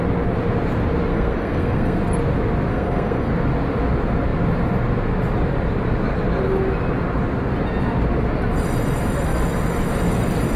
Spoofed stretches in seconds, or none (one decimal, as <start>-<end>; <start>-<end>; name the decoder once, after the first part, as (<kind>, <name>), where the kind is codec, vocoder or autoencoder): 1.1-2.0 (codec, SNAC); 2.7-3.3